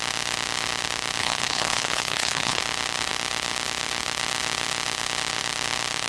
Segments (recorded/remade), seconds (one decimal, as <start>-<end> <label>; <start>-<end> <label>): 0.0-1.2 recorded; 1.2-2.6 remade; 2.6-6.1 recorded